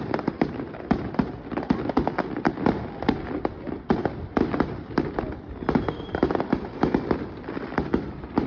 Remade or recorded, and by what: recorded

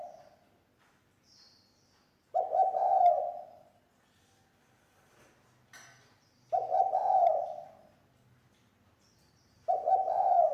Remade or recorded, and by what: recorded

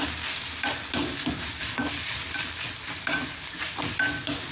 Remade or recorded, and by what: recorded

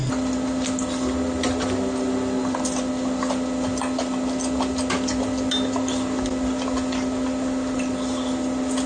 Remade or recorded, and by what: recorded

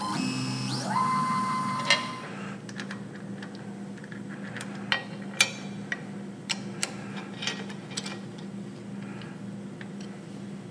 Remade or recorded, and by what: recorded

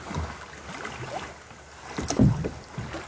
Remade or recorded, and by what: recorded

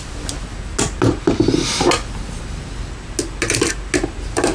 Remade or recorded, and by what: recorded